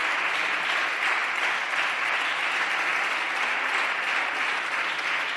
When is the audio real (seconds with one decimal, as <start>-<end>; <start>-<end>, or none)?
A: 0.0-5.4